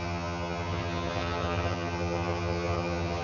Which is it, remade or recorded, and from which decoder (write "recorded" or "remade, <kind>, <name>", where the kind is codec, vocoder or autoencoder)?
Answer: remade, vocoder, HiFi-GAN